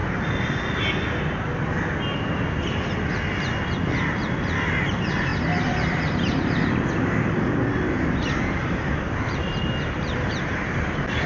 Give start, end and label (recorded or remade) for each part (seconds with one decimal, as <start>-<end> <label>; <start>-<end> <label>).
0.0-3.1 recorded; 3.1-3.5 remade; 3.5-4.7 recorded; 4.7-5.3 remade; 5.3-9.1 recorded; 9.1-11.3 remade